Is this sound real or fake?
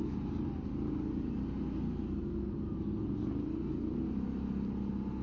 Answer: real